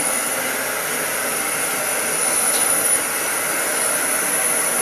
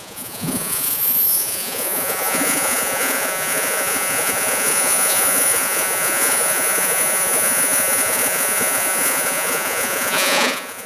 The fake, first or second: second